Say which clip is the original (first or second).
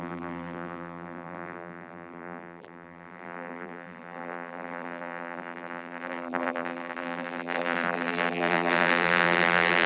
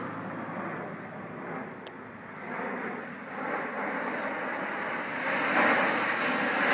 second